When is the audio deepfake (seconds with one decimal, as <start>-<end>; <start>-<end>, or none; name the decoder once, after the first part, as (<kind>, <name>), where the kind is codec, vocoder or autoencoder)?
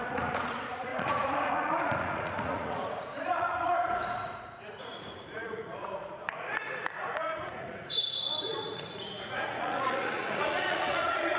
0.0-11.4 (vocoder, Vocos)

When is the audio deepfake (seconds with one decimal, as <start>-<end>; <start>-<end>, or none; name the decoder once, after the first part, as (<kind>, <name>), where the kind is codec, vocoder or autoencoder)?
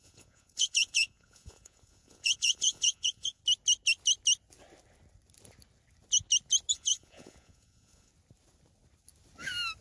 0.0-3.4 (vocoder, Vocos); 6.7-8.1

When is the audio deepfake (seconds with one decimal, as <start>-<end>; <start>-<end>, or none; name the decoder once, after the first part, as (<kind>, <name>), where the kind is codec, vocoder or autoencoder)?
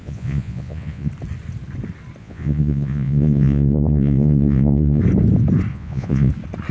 0.0-1.1 (vocoder, Vocos); 2.2-5.0; 5.7-6.3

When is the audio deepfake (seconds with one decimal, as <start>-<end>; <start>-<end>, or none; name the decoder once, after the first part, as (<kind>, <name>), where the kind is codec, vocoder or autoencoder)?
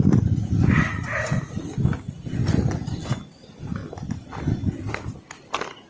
none